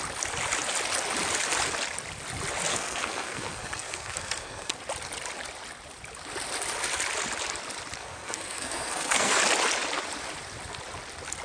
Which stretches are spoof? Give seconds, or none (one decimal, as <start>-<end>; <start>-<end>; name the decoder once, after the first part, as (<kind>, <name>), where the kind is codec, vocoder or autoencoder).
2.7-4.8 (codec, SNAC); 8.0-9.4